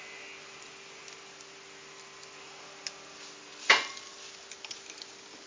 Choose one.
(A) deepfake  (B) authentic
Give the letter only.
B